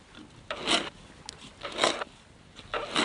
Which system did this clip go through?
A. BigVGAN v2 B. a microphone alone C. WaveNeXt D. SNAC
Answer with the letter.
B